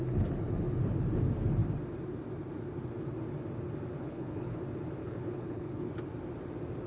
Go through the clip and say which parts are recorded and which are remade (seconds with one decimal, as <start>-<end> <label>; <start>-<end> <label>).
0.0-4.0 recorded; 4.0-4.6 remade; 4.6-5.0 recorded; 5.0-5.9 remade; 5.9-6.9 recorded